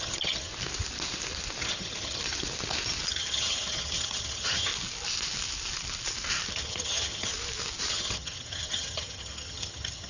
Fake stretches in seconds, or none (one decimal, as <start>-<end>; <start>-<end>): 0.0-0.5; 1.6-2.2; 3.1-4.7; 6.5-7.3; 7.9-10.1